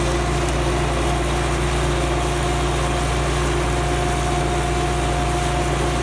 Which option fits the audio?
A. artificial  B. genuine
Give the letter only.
B